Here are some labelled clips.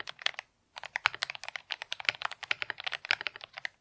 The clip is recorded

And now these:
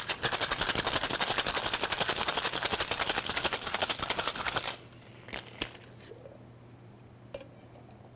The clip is recorded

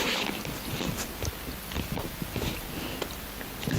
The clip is recorded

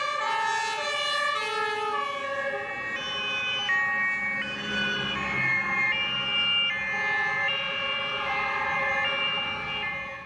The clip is recorded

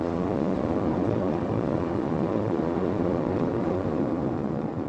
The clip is remade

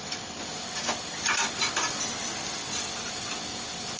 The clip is recorded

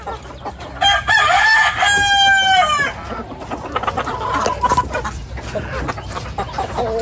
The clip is recorded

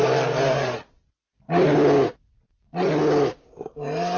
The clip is recorded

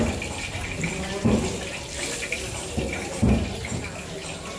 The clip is recorded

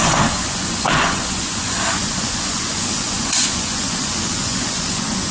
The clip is remade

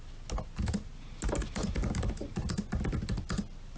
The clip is recorded